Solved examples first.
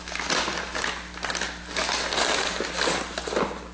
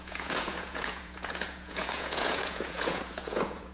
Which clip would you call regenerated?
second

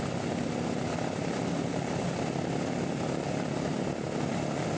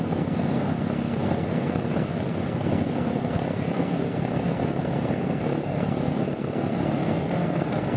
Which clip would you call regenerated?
second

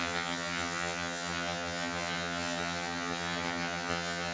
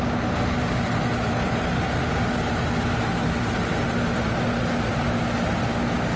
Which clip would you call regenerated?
first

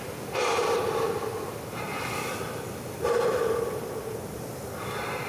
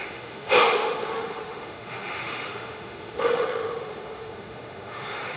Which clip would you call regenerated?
second